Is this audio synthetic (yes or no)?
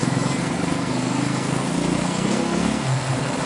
yes